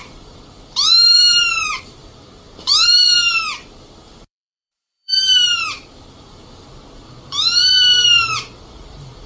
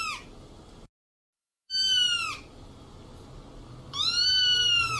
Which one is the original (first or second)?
second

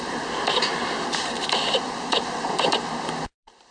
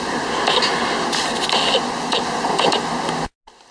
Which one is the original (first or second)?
second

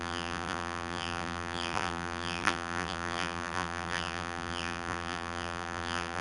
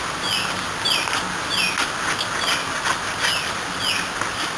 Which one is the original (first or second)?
second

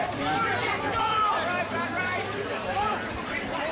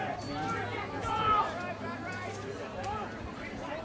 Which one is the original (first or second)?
second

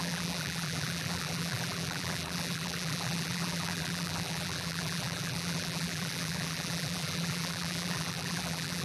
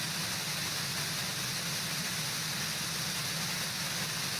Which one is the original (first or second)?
second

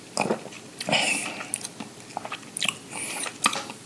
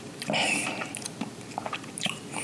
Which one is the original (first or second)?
first